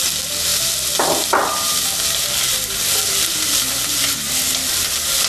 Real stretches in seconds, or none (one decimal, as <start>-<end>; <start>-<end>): 0.0-5.3